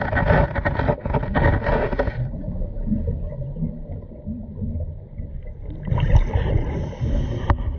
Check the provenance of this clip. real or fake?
real